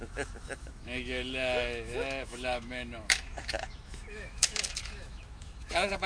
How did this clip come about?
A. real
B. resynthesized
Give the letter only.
B